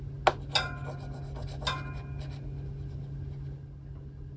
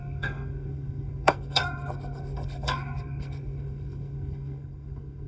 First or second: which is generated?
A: second